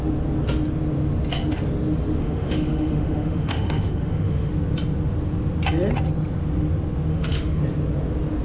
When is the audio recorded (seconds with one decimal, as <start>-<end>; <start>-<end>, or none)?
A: 0.0-2.2; 4.5-7.1; 7.6-8.4